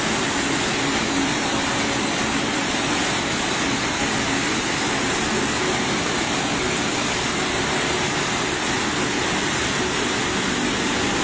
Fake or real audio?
real